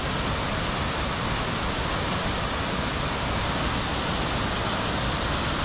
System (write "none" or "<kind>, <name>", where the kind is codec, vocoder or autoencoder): none